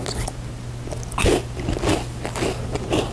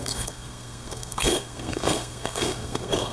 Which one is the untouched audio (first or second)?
first